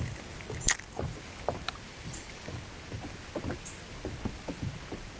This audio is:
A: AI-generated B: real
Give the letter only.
B